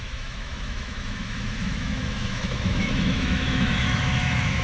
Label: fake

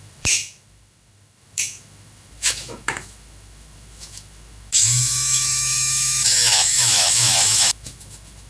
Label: fake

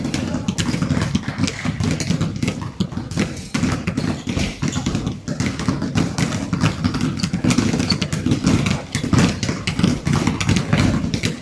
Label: real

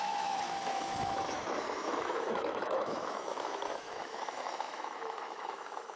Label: fake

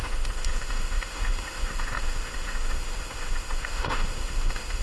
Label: fake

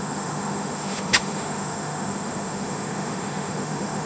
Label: fake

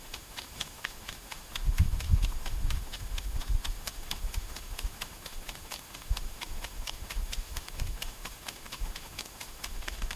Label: fake